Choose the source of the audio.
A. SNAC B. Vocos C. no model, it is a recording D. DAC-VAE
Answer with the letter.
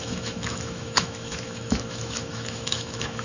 D